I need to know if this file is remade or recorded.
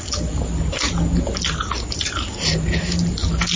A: recorded